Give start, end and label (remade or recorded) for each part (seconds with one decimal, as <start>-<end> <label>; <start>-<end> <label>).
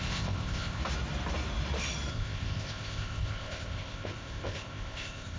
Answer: 0.0-0.8 remade; 0.8-2.1 recorded; 2.1-5.4 remade